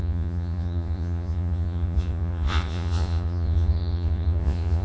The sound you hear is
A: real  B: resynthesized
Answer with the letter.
B